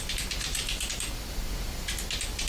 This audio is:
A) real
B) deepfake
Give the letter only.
A